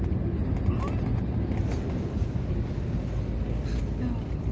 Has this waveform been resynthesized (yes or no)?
no